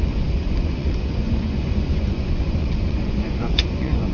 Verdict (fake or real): fake